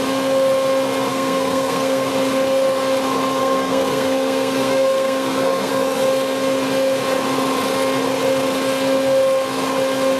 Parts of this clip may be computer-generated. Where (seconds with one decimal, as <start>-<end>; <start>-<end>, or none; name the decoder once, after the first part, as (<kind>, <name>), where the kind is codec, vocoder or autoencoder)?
1.1-2.1 (codec, SNAC); 3.4-5.7